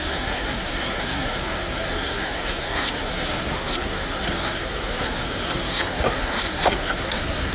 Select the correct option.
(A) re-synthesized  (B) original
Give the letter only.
A